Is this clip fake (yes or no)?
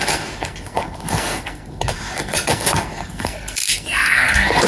yes